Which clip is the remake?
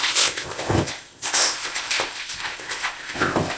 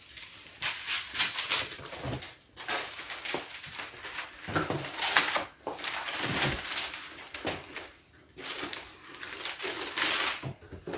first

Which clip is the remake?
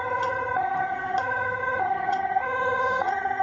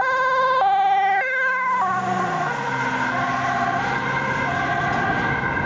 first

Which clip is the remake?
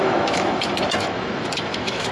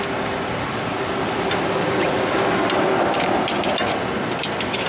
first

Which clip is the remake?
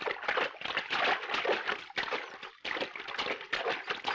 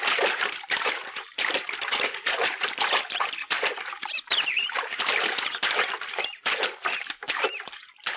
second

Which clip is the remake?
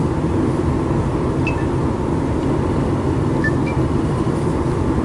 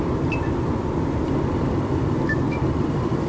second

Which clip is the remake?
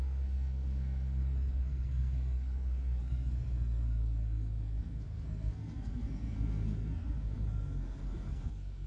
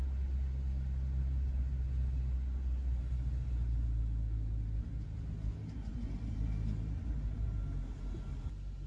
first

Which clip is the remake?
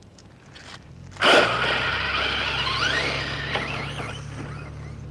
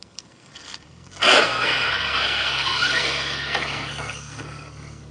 second